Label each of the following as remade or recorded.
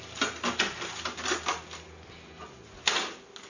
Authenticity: recorded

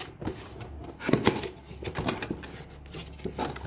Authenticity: recorded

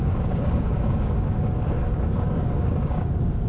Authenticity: remade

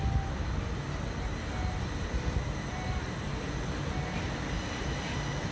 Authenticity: recorded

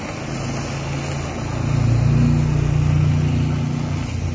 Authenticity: recorded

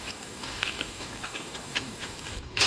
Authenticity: remade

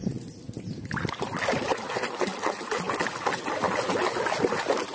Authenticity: recorded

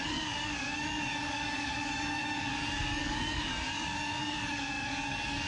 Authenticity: remade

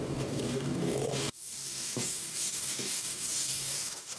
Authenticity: remade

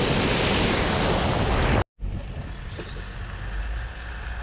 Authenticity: recorded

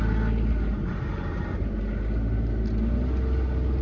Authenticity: recorded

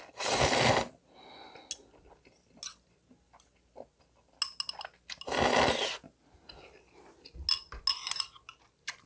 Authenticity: recorded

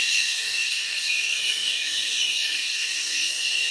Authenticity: remade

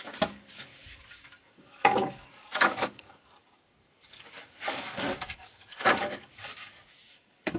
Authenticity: remade